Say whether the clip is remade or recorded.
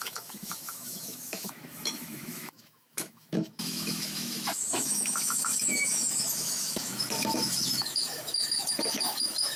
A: remade